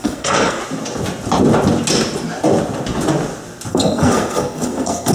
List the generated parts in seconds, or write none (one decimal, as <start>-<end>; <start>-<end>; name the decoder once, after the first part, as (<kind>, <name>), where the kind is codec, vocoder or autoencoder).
0.0-0.6 (codec, SNAC); 3.7-5.1